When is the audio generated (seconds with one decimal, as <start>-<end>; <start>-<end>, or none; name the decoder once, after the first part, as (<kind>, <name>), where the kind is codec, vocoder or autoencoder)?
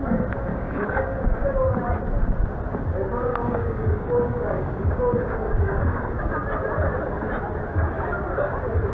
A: 0.5-1.2 (codec, DAC); 3.4-6.3